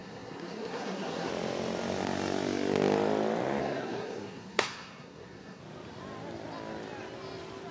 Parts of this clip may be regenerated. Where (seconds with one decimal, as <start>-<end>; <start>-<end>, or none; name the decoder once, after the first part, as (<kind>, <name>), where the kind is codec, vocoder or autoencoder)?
0.0-1.3 (codec, SNAC); 3.6-5.6